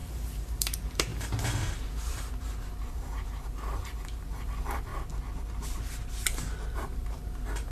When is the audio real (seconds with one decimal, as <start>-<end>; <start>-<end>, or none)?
4.9-6.7